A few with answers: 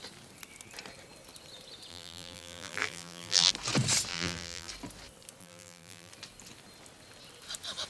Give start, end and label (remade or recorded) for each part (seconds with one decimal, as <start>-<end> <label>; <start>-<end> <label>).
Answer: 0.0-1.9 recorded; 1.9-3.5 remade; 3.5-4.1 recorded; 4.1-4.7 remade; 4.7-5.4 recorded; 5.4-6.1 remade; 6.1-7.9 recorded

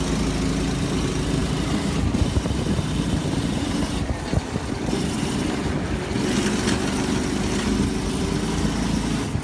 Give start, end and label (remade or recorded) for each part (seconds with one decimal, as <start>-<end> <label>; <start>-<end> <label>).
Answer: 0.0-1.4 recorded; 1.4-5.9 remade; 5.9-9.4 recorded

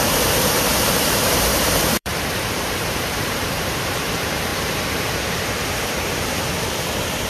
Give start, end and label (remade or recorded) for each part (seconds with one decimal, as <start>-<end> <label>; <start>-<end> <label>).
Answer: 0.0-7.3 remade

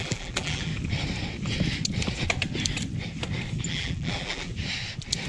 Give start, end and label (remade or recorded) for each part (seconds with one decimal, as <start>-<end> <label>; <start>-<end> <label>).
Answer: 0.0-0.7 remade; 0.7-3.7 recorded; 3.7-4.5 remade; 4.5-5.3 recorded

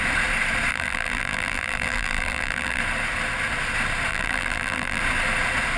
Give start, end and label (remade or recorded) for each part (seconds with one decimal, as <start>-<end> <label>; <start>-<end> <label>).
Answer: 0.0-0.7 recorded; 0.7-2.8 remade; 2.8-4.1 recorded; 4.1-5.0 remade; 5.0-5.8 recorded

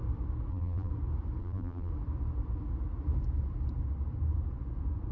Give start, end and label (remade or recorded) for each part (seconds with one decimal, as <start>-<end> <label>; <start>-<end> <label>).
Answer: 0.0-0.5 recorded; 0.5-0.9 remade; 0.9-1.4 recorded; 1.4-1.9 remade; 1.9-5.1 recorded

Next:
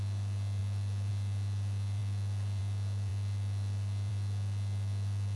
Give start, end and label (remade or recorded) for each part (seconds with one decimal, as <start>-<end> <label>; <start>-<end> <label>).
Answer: 0.0-5.4 recorded